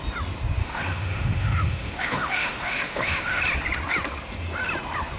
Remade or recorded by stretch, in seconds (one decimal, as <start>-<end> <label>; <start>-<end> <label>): 0.0-0.6 recorded; 0.6-3.4 remade; 3.4-5.2 recorded